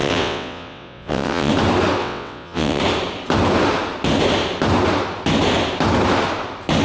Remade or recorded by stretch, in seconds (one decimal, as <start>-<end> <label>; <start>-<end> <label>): 0.0-1.5 remade; 1.5-2.0 recorded; 2.0-2.8 remade; 2.8-6.8 recorded